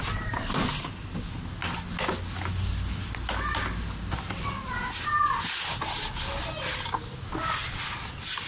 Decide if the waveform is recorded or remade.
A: recorded